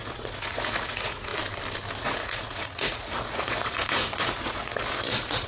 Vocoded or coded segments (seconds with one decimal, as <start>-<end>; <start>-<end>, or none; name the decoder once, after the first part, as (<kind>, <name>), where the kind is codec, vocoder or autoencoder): 0.0-1.3 (vocoder, Vocos); 2.0-5.5